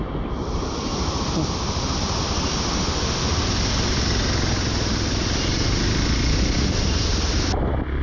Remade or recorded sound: recorded